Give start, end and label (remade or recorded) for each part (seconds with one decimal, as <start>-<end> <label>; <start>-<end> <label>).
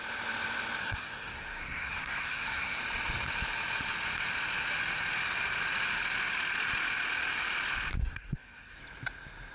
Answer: 0.0-0.8 recorded; 0.8-2.8 remade; 2.8-8.0 recorded; 8.0-8.8 remade; 8.8-9.5 recorded